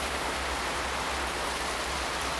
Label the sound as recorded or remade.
remade